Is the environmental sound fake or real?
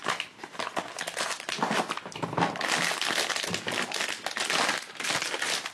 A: real